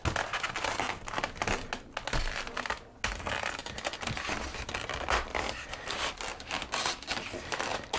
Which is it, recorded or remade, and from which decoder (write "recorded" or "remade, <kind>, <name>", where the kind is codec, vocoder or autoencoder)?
recorded